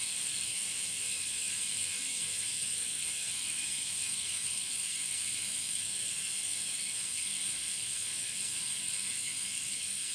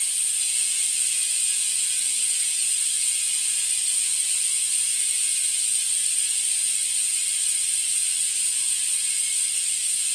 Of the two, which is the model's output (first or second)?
first